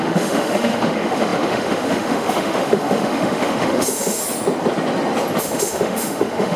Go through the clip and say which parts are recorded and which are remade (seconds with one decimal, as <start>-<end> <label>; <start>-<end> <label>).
0.0-4.2 remade; 4.2-5.4 recorded; 5.4-6.6 remade